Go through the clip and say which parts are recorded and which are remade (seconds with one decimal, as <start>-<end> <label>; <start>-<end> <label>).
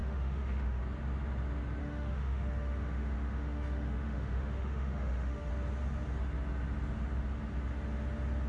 0.0-0.8 remade; 0.8-1.8 recorded; 1.8-5.5 remade; 5.5-8.5 recorded